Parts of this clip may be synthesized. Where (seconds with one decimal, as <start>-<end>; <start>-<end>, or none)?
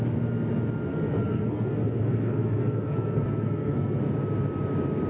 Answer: 0.9-4.0